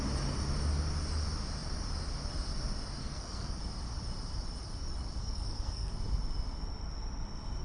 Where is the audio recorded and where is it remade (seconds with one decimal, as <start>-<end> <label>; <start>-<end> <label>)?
0.0-3.0 recorded; 3.0-3.6 remade; 3.6-5.2 recorded; 5.2-5.9 remade; 5.9-7.6 recorded